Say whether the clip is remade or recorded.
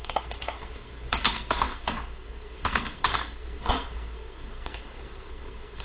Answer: remade